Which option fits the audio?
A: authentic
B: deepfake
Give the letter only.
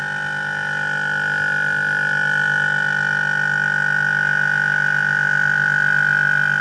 A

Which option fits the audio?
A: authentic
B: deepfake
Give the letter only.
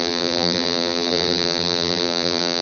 B